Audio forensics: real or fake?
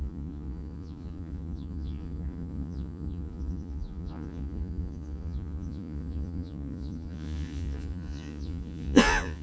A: fake